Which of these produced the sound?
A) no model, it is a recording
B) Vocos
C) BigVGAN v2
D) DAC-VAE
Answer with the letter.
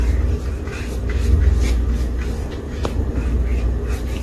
A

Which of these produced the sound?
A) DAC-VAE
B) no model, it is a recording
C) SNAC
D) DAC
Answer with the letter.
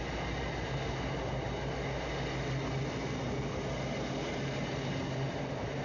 B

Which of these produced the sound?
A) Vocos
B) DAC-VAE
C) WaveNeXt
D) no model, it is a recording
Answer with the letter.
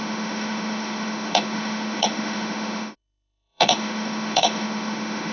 B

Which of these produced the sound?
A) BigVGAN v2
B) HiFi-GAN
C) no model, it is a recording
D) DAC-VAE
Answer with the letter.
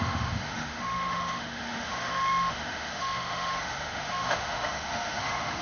D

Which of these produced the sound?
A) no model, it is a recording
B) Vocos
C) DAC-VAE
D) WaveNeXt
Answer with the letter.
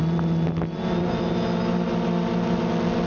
A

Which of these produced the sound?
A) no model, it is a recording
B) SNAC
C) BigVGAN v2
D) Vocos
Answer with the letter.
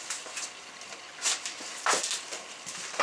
A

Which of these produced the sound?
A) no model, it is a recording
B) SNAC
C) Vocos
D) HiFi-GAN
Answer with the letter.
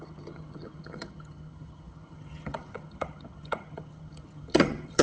D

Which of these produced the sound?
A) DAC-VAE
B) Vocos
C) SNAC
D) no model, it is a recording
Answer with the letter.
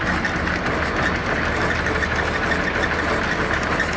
D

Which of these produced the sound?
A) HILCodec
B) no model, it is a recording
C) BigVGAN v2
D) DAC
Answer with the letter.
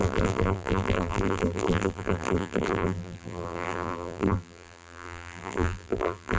C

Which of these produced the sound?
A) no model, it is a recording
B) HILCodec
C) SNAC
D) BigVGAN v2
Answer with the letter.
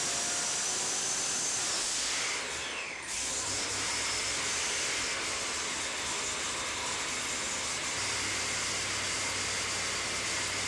A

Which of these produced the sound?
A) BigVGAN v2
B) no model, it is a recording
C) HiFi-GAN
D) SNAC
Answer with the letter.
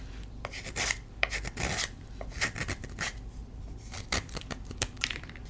A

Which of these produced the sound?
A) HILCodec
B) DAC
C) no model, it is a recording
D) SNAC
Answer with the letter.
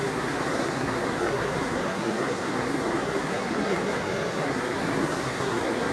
D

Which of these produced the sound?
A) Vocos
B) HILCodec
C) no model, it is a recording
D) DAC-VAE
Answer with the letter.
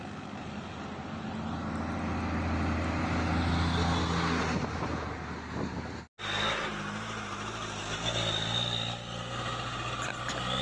C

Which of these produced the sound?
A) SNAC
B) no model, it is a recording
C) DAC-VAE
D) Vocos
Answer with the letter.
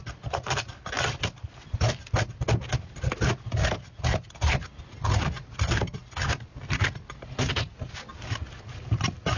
B